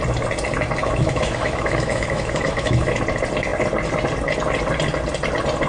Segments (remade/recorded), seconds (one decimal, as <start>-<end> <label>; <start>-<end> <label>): 0.0-0.8 recorded; 0.8-3.0 remade; 3.0-5.7 recorded

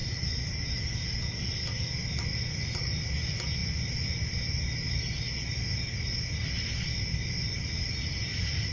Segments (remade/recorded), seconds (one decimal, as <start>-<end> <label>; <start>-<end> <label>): 0.0-8.7 recorded

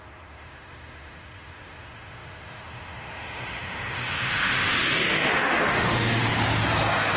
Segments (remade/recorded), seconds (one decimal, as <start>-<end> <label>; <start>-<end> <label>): 0.0-6.2 remade; 6.2-7.2 recorded

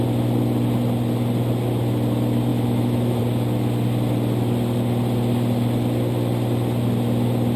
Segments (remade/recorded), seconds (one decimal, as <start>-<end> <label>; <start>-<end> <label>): 0.0-2.5 recorded; 2.5-3.2 remade; 3.2-7.6 recorded

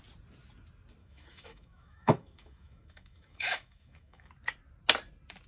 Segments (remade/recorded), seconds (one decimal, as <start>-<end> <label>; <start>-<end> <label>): 0.0-1.0 recorded; 1.0-4.3 remade; 4.3-5.5 recorded

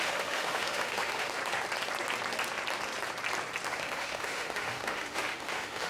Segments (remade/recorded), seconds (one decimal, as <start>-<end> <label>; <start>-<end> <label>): 0.0-1.4 remade; 1.4-3.7 recorded; 3.7-5.9 remade

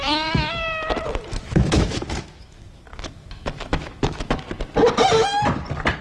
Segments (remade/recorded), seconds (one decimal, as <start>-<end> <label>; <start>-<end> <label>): 0.0-1.3 recorded; 1.3-4.4 remade; 4.4-6.0 recorded